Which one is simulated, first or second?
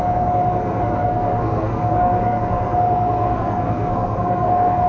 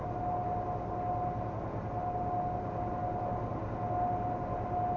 first